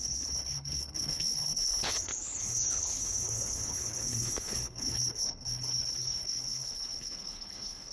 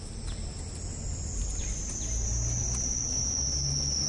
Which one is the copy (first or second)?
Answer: first